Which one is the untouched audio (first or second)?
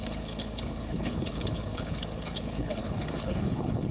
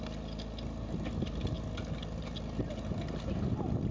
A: second